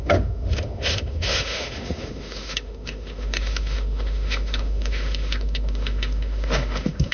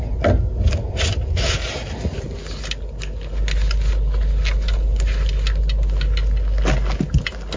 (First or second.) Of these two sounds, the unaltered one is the second